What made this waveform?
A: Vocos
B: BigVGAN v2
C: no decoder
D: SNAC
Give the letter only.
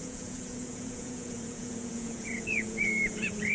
A